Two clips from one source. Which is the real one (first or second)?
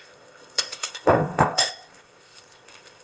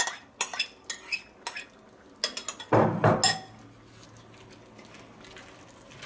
second